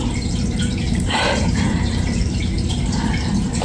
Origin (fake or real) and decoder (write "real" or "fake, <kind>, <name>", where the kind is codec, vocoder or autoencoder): fake, vocoder, BigVGAN v2